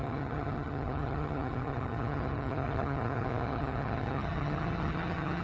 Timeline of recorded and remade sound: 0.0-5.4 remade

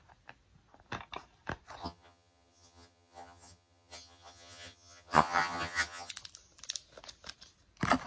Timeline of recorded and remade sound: 0.0-1.8 recorded; 1.8-6.1 remade; 6.1-8.1 recorded

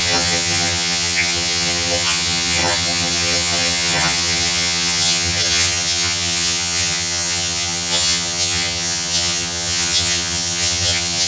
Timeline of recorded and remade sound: 0.0-11.3 remade

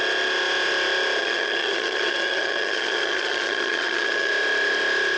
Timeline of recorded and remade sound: 0.0-1.2 recorded; 1.2-4.3 remade; 4.3-5.2 recorded

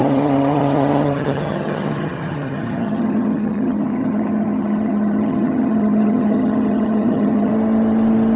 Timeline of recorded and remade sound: 0.0-7.5 remade; 7.5-8.4 recorded

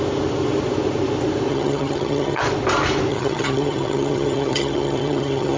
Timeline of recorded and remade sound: 0.0-1.5 recorded; 1.5-2.4 remade; 2.4-3.1 recorded; 3.1-5.6 remade

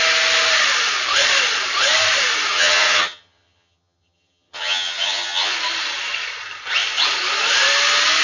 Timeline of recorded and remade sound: 0.0-2.5 recorded; 2.5-5.5 remade; 5.5-8.2 recorded

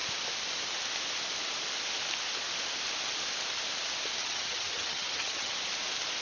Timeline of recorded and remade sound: 0.0-4.2 recorded; 4.2-5.5 remade; 5.5-6.2 recorded